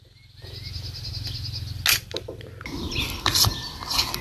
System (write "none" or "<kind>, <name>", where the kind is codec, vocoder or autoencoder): none